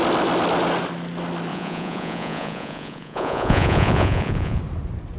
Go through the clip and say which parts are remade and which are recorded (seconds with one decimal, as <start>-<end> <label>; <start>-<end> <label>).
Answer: 0.0-1.5 recorded; 1.5-4.6 remade; 4.6-5.2 recorded